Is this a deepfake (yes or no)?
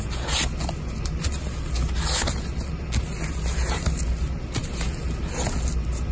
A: no